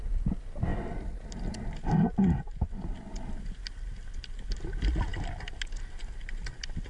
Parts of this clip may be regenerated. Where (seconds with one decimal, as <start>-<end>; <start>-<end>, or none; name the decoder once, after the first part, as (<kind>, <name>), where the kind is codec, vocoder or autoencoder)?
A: 0.7-1.6 (vocoder, BigVGAN v2); 6.0-6.9